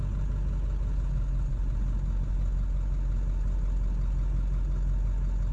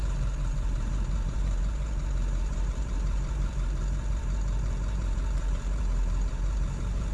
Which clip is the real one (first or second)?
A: first